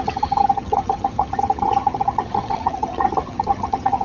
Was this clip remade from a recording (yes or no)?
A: yes